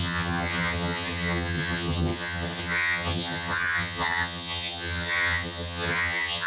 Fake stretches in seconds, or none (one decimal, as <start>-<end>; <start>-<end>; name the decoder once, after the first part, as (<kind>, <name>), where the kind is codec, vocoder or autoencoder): 0.0-6.5 (vocoder, HiFi-GAN)

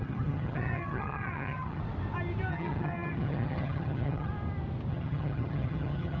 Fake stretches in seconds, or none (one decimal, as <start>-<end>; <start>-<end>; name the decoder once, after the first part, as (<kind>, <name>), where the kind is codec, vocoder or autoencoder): 0.0-1.8 (vocoder, HiFi-GAN); 2.5-4.3; 4.9-6.2